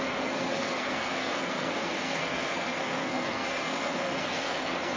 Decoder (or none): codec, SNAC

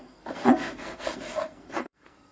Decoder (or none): codec, SNAC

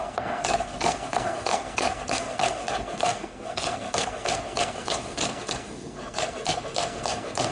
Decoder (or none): codec, SNAC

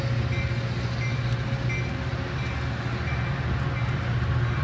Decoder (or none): none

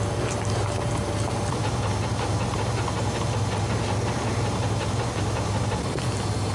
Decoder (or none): none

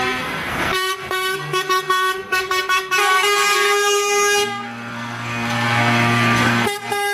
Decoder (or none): codec, SNAC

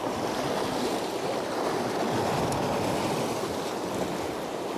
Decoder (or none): none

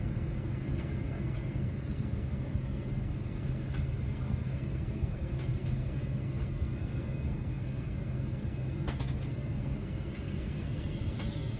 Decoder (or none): codec, SNAC